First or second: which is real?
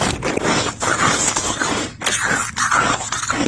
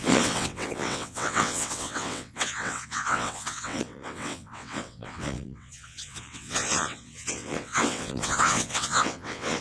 first